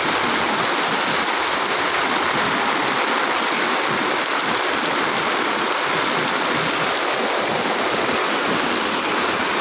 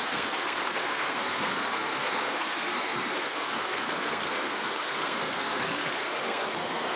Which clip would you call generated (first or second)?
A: second